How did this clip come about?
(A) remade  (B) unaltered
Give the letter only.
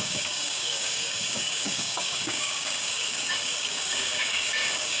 A